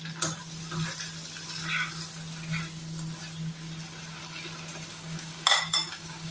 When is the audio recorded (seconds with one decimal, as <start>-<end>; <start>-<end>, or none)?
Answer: 0.0-4.9